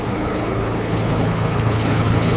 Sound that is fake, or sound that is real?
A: fake